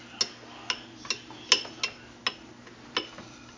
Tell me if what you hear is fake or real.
real